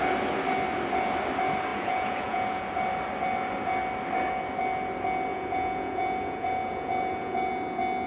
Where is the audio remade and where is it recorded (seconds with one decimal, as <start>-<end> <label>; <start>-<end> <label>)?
0.0-1.7 recorded; 1.7-2.6 remade; 2.6-5.3 recorded; 5.3-7.5 remade; 7.5-8.1 recorded